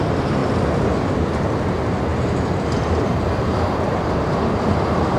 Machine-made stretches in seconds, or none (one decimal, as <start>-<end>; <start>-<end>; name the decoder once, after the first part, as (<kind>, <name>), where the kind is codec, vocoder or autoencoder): none